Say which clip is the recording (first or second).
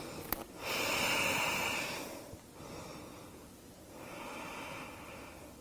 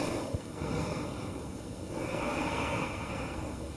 first